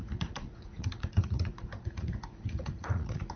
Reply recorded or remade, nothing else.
remade